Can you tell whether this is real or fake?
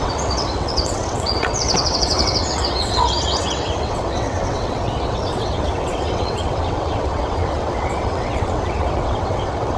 fake